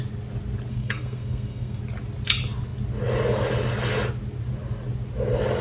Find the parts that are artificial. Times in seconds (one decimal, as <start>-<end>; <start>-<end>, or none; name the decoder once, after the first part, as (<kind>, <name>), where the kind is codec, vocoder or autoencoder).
0.7-1.8 (codec, SNAC)